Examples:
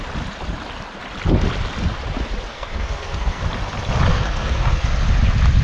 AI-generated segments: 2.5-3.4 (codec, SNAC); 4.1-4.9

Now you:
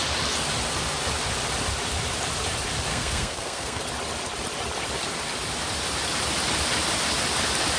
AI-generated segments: 2.9-3.8 (codec, SNAC)

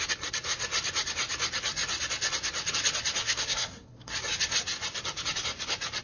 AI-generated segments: 3.2-4.1 (codec, SNAC)